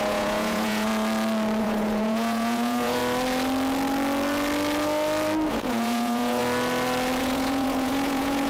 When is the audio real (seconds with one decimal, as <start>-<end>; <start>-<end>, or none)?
0.9-1.6; 3.0-5.5; 6.4-7.2